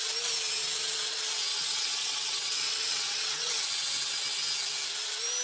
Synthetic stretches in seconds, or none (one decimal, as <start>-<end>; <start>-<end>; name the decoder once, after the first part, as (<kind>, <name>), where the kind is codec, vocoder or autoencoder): 1.5-3.6 (vocoder, WaveNeXt)

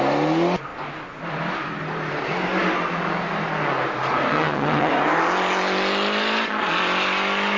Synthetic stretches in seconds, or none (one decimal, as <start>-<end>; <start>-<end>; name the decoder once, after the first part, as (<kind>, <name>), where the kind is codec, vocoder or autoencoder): 4.3-4.9 (vocoder, WaveNeXt)

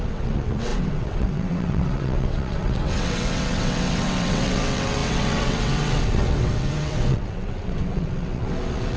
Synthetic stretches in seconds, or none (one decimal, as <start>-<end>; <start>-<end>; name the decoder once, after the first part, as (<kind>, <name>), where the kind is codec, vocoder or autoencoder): 0.0-9.0 (vocoder, WaveNeXt)

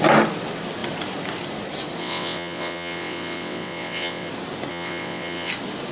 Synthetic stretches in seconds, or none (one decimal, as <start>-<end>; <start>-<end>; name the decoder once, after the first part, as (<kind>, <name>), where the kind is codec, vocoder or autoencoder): 2.0-4.3 (vocoder, WaveNeXt); 4.7-5.5

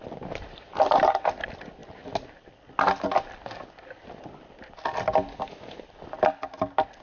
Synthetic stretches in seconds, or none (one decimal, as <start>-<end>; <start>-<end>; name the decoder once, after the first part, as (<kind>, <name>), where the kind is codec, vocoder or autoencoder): none

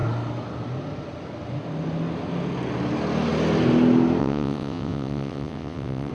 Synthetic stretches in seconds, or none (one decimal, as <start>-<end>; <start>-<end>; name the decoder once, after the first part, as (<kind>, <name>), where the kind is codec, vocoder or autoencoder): 4.2-6.1 (vocoder, WaveNeXt)